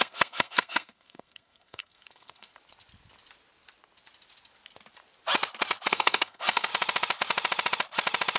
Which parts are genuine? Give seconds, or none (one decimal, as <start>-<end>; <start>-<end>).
2.5-5.9; 6.7-8.4